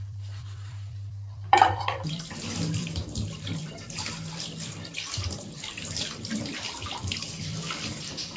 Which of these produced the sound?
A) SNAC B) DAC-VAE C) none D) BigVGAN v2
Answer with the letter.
D